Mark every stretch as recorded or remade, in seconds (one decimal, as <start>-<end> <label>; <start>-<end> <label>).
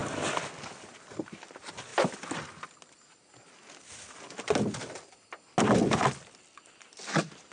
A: 0.0-7.5 recorded